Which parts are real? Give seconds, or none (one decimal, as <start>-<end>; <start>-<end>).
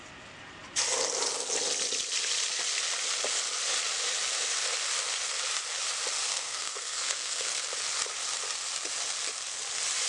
0.0-6.3; 7.6-10.1